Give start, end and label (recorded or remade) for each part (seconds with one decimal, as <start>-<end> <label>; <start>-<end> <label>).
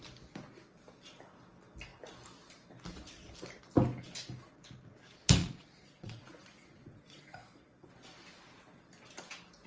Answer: 0.0-5.4 recorded; 5.4-7.9 remade; 7.9-9.7 recorded